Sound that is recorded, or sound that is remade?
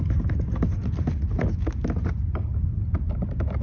recorded